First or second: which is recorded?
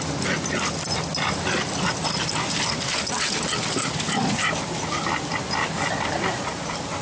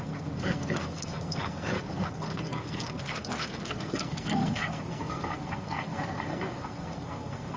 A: first